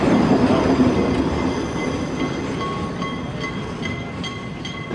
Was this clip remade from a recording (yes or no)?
no